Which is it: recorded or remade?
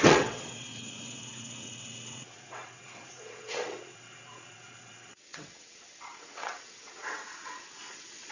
remade